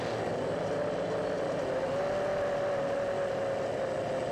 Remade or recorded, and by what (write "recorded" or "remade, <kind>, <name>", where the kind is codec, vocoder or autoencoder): recorded